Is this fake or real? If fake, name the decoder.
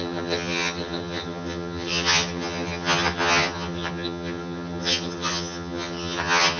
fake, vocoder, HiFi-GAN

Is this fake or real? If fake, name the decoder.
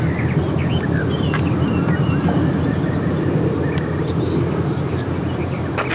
real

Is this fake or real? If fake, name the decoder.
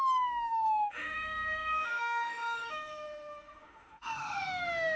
fake, autoencoder, DAC-VAE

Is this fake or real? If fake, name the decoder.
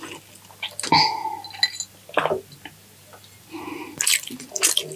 real